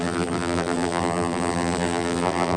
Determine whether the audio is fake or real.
fake